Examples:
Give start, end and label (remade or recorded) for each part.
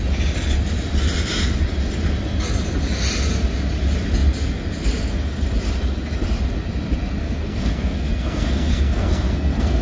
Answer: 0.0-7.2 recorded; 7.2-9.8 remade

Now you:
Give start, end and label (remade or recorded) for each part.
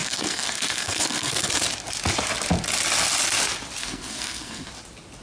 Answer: 0.0-1.5 remade; 1.5-3.8 recorded; 3.8-4.7 remade; 4.7-5.2 recorded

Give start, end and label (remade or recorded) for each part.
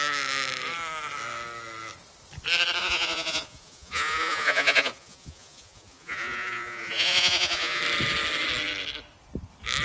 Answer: 0.0-2.8 recorded; 2.8-7.8 remade; 7.8-9.8 recorded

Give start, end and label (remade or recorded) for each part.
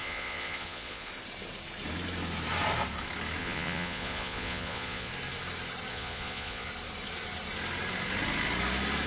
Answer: 0.0-1.1 remade; 1.1-3.4 recorded; 3.4-5.1 remade; 5.1-5.9 recorded; 5.9-6.7 remade; 6.7-9.1 recorded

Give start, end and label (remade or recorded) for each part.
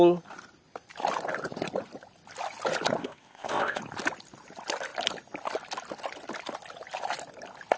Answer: 0.0-3.0 recorded; 3.0-3.8 remade; 3.8-7.8 recorded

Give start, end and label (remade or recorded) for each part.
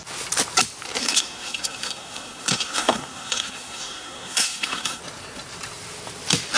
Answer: 0.0-1.0 recorded; 1.0-5.0 remade; 5.0-6.6 recorded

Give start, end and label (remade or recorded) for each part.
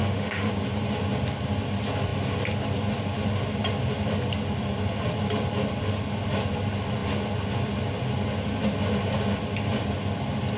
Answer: 0.0-0.5 remade; 0.5-10.6 recorded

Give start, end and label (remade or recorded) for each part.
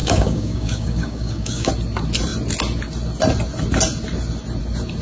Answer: 0.0-1.7 remade; 1.7-5.0 recorded